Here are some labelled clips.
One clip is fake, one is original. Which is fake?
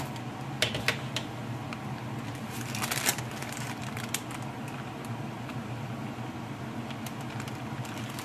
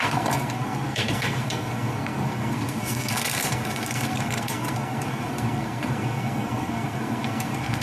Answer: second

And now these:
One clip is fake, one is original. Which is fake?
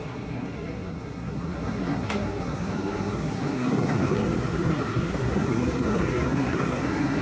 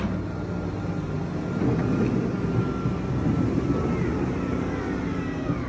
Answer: first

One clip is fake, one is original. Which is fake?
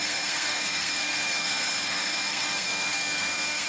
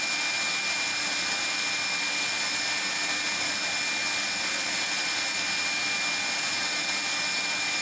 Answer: first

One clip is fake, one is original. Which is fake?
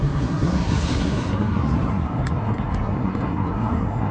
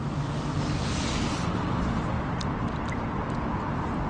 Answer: first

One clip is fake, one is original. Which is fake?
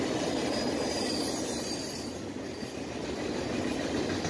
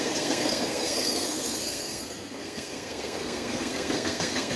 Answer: second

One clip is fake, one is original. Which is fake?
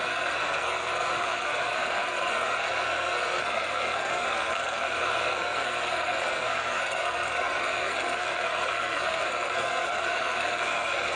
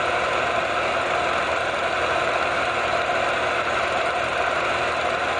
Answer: first